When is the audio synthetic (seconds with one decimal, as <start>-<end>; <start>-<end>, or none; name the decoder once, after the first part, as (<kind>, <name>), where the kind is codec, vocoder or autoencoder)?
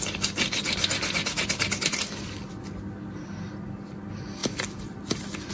none